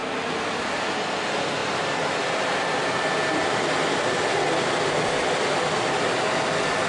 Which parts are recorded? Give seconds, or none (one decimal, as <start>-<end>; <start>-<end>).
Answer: 0.0-6.9